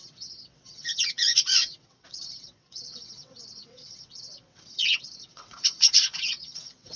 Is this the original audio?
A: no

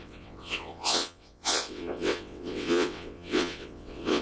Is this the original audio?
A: no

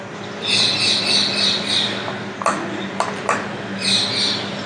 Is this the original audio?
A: yes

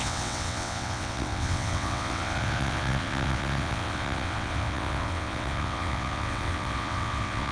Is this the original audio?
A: no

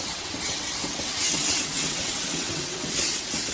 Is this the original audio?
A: no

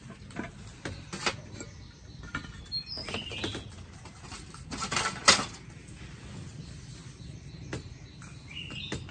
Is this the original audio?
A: yes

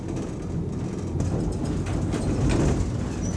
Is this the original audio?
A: yes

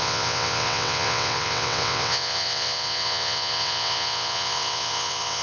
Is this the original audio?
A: no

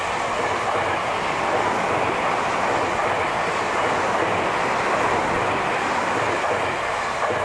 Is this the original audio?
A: yes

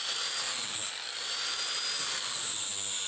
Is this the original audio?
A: yes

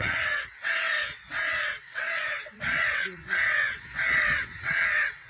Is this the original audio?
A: no